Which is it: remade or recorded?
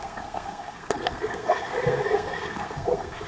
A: remade